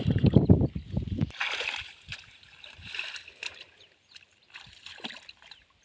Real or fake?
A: real